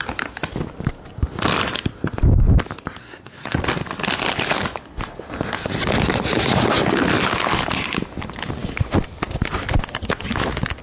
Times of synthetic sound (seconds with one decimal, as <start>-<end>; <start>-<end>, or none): 3.0-3.6